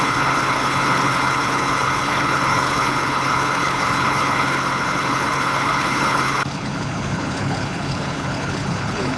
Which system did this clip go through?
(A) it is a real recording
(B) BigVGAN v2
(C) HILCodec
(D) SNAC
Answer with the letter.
C